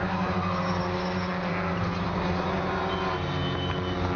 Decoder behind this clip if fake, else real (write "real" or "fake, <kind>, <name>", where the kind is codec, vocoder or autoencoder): real